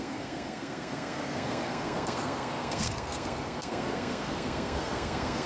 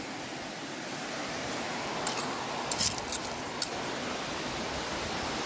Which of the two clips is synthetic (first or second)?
first